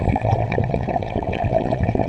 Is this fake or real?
fake